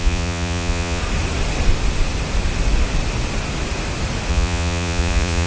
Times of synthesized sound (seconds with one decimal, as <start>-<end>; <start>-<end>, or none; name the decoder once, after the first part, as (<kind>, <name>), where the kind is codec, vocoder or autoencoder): 0.0-1.0 (vocoder, Vocos); 4.3-5.5